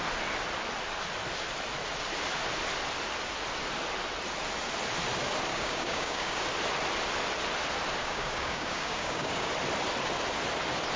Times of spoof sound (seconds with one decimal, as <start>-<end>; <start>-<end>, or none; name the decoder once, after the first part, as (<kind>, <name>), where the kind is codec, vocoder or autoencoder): 5.5-6.4 (codec, DAC); 8.0-9.5